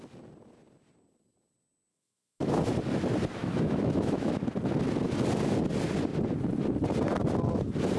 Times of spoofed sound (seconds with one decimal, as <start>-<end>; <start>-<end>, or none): 1.9-2.6; 3.4-4.4